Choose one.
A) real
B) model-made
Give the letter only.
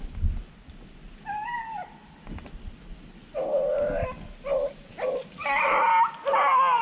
A